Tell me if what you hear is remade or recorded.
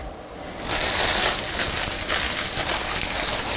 recorded